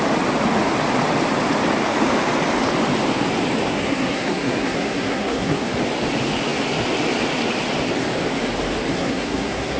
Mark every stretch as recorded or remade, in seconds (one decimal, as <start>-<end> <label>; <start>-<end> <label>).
0.0-3.7 recorded; 3.7-5.7 remade; 5.7-8.9 recorded; 8.9-9.8 remade